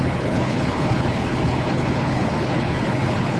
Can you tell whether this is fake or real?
fake